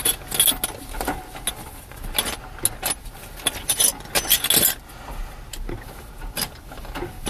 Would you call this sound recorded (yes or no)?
yes